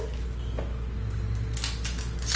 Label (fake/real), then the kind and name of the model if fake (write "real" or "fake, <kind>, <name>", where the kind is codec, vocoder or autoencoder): real